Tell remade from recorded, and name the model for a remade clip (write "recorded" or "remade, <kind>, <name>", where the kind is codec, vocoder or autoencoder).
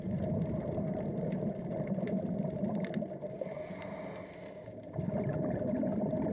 recorded